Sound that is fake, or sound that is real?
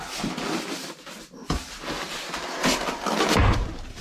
real